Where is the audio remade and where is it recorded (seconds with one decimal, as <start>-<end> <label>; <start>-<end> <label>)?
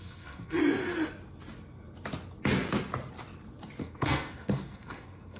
0.0-0.6 remade; 0.6-3.8 recorded; 3.8-5.4 remade